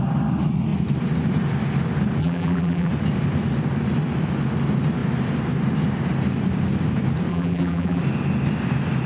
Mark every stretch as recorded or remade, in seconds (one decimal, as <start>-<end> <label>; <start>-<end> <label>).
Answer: 0.0-2.2 recorded; 2.2-2.9 remade; 2.9-7.3 recorded; 7.3-8.0 remade; 8.0-9.1 recorded